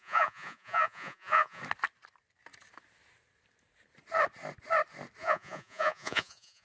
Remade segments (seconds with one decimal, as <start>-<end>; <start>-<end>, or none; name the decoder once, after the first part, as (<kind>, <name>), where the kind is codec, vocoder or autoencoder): 0.0-1.6 (vocoder, Vocos); 5.2-6.6